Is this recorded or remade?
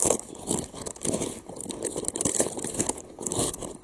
remade